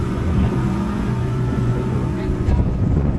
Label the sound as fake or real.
fake